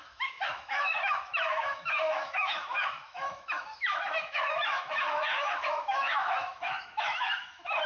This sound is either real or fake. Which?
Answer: fake